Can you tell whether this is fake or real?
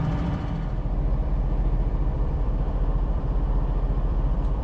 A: fake